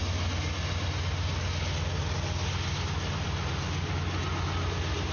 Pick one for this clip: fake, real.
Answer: real